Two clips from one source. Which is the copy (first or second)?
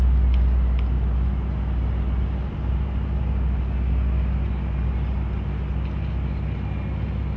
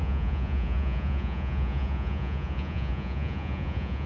second